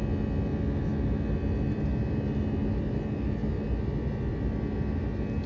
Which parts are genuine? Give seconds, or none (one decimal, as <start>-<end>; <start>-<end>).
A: 0.0-5.5